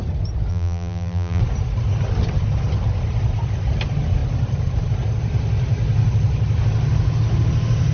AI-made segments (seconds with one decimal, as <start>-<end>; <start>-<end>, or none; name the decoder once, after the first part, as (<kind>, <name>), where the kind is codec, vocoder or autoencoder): 0.5-1.4 (vocoder, BigVGAN v2)